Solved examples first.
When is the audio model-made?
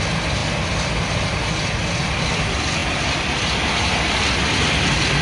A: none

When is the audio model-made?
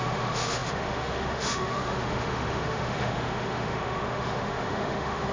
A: 0.0-5.3 (autoencoder, DAC-VAE)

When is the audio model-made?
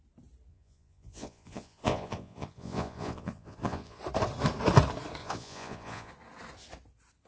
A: 0.5-4.0 (vocoder, Vocos); 5.2-6.1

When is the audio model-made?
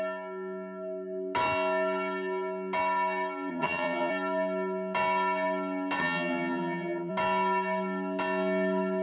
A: 3.5-4.1 (vocoder, HiFi-GAN); 6.0-7.1